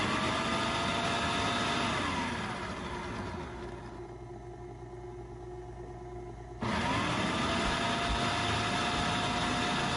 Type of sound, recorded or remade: recorded